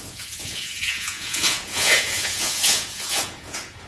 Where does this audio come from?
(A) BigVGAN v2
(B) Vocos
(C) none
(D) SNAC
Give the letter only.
B